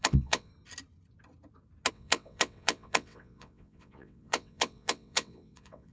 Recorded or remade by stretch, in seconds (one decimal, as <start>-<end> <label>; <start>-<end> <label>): 0.0-0.5 remade; 0.5-1.9 recorded; 1.9-5.9 remade